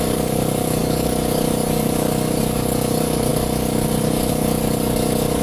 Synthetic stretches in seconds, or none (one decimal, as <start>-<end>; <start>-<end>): 0.0-5.4